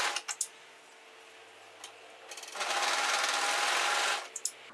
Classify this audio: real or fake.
real